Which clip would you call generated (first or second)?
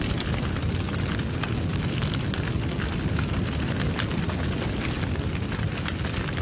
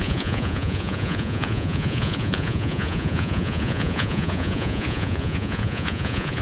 second